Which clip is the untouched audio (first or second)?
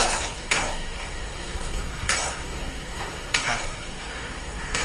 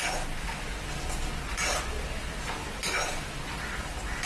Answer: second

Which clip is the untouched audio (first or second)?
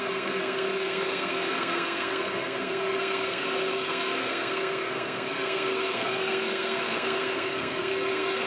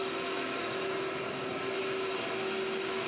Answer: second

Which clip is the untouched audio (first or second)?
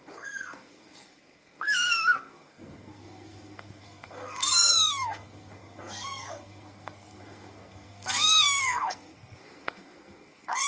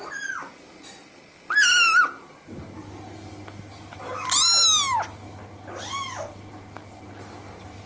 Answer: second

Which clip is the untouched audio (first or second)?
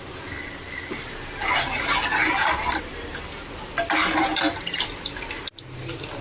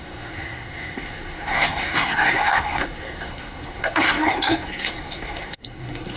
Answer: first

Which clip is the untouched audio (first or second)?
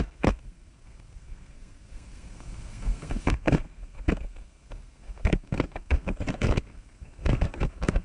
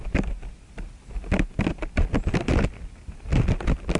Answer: second